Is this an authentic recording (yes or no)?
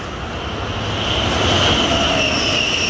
yes